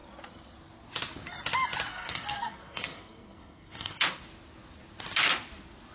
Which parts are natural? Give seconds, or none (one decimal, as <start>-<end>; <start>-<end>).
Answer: 0.0-1.9; 4.0-5.9